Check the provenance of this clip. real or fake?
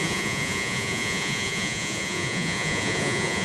fake